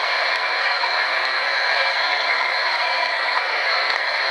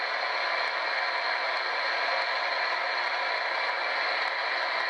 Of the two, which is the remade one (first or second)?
first